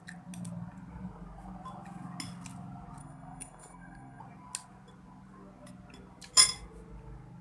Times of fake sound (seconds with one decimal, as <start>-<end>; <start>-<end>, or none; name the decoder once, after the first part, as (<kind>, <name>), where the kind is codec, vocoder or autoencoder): 3.0-4.2 (codec, SNAC)